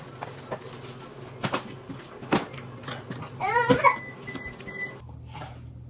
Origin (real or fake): real